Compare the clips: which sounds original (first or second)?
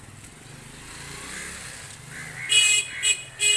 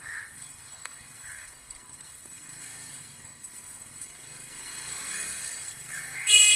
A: first